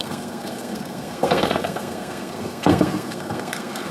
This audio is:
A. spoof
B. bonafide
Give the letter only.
A